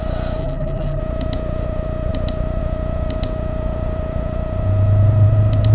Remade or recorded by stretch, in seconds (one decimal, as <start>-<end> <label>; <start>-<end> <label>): 0.0-0.4 recorded; 0.4-1.0 remade; 1.0-5.7 recorded